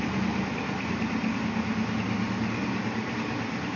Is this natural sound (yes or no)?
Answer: yes